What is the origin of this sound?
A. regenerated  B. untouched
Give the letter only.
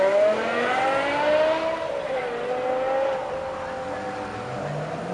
B